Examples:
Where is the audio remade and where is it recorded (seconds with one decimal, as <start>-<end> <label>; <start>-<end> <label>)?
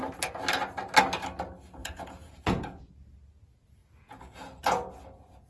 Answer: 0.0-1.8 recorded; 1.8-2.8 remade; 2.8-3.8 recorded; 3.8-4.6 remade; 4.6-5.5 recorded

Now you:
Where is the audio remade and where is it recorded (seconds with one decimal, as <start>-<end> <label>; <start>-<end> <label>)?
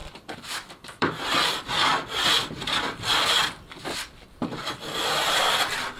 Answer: 0.0-1.2 remade; 1.2-4.4 recorded; 4.4-5.0 remade; 5.0-6.0 recorded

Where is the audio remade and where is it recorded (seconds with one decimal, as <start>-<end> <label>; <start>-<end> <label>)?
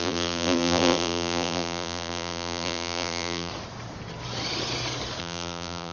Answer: 0.0-3.5 remade; 3.5-5.2 recorded; 5.2-5.9 remade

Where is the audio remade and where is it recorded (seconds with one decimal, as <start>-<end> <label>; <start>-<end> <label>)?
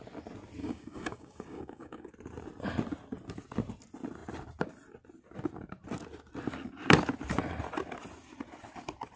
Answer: 0.0-0.6 recorded; 0.6-2.1 remade; 2.1-9.2 recorded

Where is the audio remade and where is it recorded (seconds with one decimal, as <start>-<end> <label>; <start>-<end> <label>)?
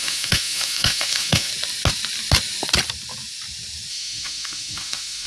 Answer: 0.0-1.5 remade; 1.5-3.9 recorded; 3.9-5.3 remade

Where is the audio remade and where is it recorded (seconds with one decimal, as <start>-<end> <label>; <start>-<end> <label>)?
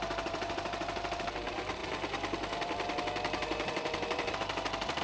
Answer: 0.0-1.8 remade; 1.8-5.0 recorded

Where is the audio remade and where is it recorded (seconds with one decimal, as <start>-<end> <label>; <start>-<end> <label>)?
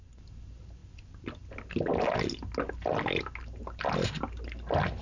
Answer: 0.0-5.0 recorded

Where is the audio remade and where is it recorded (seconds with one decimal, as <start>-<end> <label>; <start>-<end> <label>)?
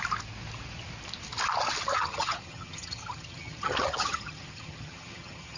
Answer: 0.0-1.9 recorded; 1.9-5.6 remade